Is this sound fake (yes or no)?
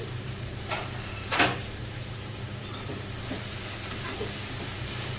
yes